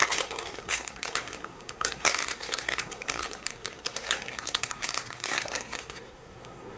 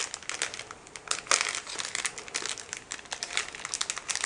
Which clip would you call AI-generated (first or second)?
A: first